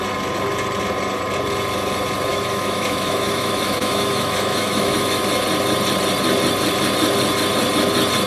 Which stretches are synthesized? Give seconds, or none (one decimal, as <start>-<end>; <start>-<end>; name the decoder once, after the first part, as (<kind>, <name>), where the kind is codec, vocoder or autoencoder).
2.3-5.2 (autoencoder, DAC-VAE)